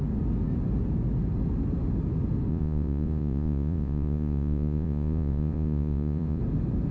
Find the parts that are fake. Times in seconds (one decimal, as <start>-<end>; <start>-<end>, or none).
2.5-6.4

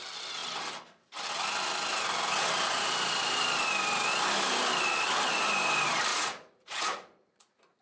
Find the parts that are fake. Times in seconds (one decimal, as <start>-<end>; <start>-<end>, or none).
6.1-7.8

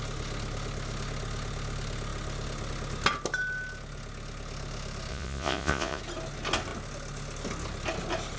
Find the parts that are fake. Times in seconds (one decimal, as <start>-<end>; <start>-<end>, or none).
5.1-6.0

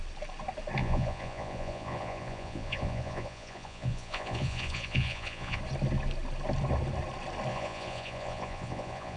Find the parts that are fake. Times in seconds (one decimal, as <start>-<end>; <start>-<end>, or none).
0.8-5.6; 7.5-9.2